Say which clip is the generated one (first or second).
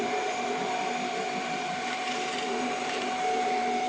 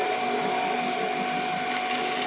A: first